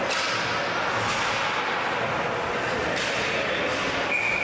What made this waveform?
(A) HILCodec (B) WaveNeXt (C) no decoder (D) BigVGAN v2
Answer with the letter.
C